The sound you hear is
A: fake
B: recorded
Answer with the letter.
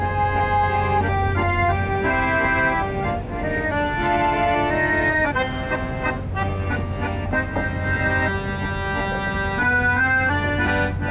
B